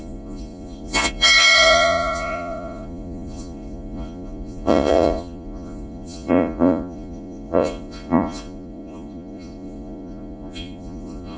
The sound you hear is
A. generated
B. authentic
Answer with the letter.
A